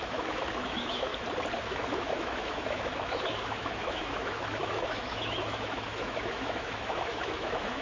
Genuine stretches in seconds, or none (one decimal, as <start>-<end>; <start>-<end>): 1.1-1.6